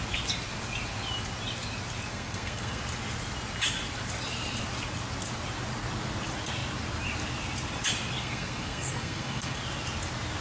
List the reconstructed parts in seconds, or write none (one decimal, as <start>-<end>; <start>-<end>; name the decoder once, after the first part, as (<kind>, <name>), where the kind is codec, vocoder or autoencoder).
2.1-2.8 (codec, SNAC); 8.2-9.6